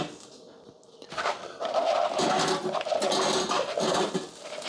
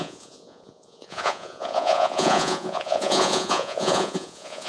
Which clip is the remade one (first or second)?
second